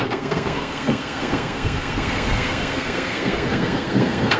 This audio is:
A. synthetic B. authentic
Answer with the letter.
A